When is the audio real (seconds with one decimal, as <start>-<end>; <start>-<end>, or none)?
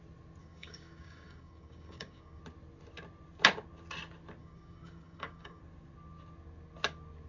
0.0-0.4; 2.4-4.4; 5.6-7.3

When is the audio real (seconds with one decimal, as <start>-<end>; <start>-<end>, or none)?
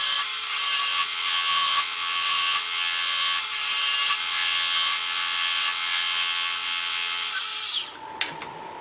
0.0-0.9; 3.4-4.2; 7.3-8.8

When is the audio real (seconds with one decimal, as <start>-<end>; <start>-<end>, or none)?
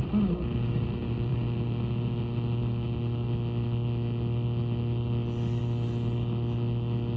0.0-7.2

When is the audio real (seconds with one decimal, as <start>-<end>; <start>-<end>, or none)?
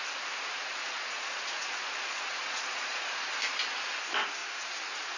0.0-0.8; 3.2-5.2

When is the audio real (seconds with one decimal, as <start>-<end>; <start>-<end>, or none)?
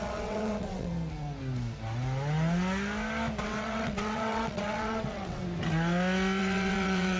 0.9-3.4; 5.4-6.4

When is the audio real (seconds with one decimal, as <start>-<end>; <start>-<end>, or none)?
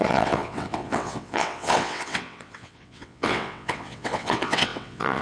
none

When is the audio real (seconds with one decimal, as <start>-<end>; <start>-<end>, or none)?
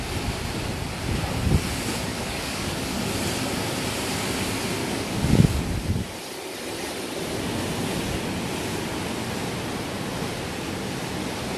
0.0-2.1; 3.1-4.8; 5.6-11.6